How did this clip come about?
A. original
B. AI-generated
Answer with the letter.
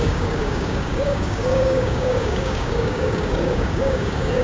B